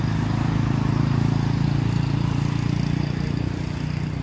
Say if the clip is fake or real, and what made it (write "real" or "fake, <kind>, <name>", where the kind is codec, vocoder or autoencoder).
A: real